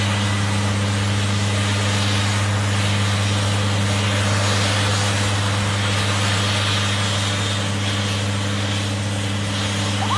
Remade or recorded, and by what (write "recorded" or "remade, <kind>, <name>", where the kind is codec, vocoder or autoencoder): recorded